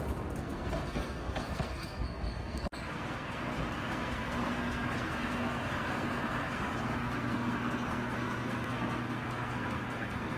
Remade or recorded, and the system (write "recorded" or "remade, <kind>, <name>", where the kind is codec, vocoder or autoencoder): remade, codec, SNAC